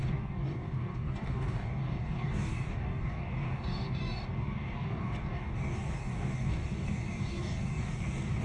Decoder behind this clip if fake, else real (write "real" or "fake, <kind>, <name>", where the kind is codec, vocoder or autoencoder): fake, codec, DAC